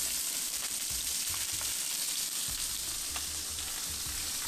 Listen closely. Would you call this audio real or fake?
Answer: fake